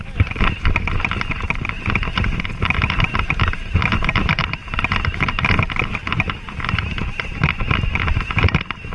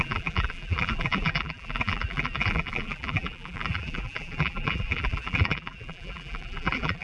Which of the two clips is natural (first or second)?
first